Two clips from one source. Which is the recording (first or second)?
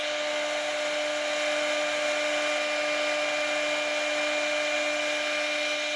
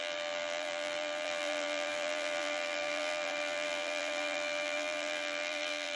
first